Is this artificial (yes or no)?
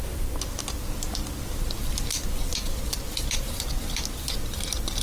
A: no